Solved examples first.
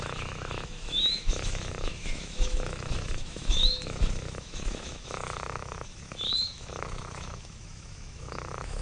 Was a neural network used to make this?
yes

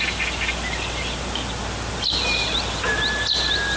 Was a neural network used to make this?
no